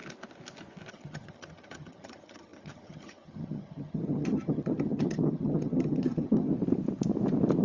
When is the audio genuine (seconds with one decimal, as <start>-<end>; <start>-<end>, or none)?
0.0-0.9; 6.5-7.6